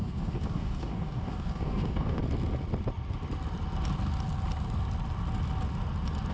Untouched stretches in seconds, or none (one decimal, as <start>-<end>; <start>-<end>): 2.2-6.3